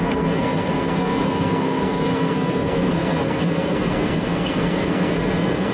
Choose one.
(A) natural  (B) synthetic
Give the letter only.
B